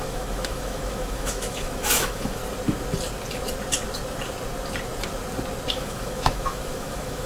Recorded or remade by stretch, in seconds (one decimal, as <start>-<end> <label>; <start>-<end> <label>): 0.0-2.4 remade; 2.4-5.7 recorded; 5.7-7.3 remade